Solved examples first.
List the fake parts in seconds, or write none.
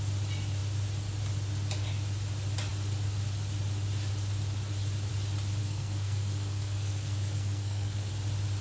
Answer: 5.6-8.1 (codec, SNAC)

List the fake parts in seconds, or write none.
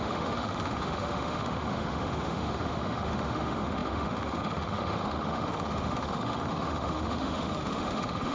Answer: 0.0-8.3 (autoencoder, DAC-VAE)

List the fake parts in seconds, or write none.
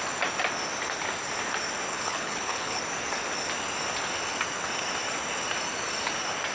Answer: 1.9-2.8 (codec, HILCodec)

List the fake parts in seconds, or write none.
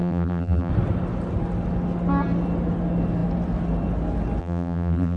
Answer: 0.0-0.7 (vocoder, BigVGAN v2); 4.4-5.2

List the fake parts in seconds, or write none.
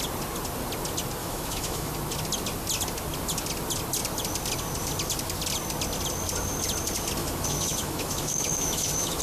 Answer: 1.2-1.9 (autoencoder, DAC-VAE); 7.2-9.2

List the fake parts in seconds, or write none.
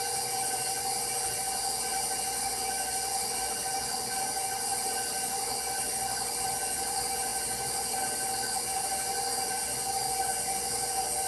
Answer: 4.7-6.6 (vocoder, BigVGAN v2)